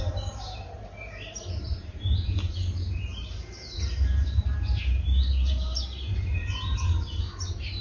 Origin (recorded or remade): remade